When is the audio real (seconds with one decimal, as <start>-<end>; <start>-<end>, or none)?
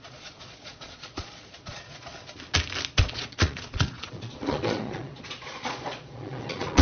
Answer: 2.1-3.0